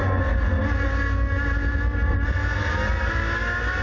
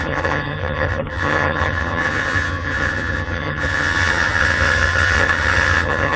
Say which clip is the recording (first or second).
first